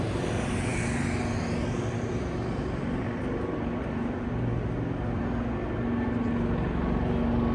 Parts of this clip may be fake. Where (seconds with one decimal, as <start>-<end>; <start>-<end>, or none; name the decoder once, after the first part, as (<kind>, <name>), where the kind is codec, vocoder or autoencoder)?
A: none